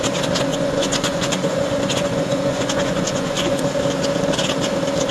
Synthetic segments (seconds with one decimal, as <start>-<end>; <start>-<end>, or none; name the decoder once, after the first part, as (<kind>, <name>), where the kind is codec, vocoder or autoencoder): 0.5-3.6 (vocoder, Vocos)